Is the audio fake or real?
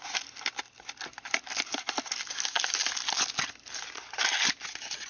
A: real